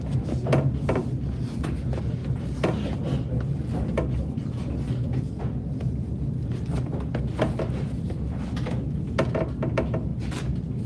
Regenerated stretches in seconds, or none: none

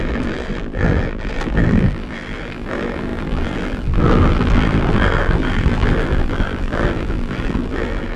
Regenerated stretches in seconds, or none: 0.0-8.2 (vocoder, BigVGAN v2)

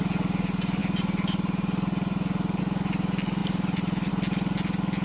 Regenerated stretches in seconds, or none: 3.4-4.1 (vocoder, BigVGAN v2)

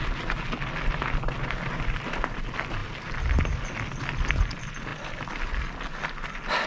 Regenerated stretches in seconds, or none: none

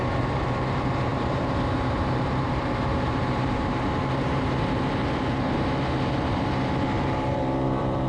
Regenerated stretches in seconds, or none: 0.0-5.0 (vocoder, BigVGAN v2); 7.0-8.1